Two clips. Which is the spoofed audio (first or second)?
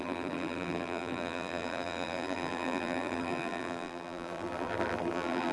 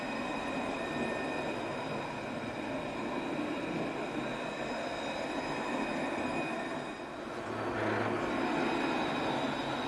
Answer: first